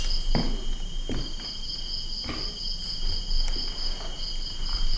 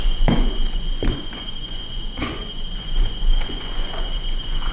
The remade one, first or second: second